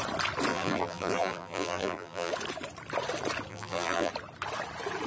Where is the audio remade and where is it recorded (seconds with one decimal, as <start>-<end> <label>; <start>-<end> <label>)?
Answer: 0.0-0.5 recorded; 0.5-2.3 remade; 2.3-3.5 recorded; 3.5-4.1 remade; 4.1-5.1 recorded